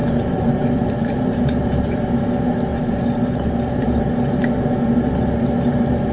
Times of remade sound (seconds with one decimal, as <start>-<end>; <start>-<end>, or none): 0.0-1.9; 2.7-4.0